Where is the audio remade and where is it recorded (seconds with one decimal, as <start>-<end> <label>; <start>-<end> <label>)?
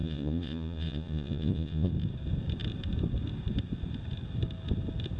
0.0-1.9 remade; 1.9-5.2 recorded